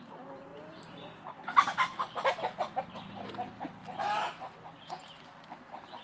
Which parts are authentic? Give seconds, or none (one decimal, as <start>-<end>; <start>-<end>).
0.0-6.0